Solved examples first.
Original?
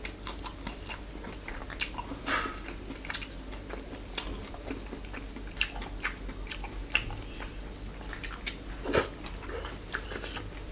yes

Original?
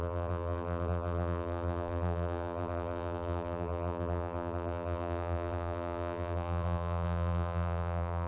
no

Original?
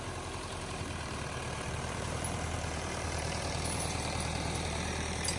no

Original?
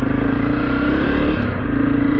no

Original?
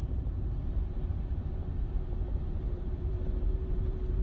no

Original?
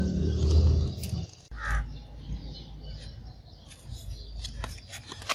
yes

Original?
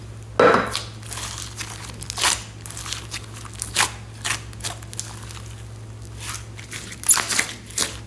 yes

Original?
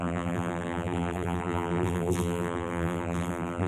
no